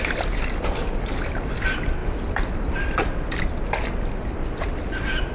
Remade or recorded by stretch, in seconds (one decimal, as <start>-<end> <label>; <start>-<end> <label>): 0.0-5.3 recorded